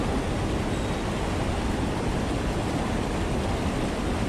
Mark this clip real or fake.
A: real